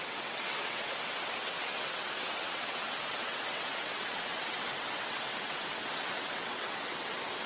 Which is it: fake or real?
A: fake